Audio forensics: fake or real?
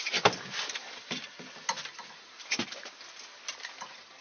real